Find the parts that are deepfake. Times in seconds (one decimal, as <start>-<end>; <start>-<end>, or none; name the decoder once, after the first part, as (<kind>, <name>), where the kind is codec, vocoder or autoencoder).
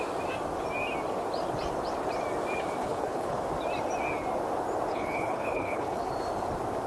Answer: 2.8-3.4 (codec, HILCodec); 4.9-6.1